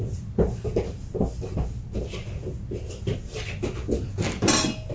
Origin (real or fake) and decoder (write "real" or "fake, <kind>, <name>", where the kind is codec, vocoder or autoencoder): real